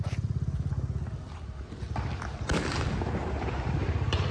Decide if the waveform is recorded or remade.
recorded